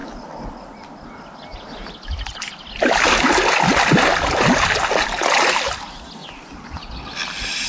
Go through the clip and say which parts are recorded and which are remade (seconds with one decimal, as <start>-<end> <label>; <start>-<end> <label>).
0.0-7.7 recorded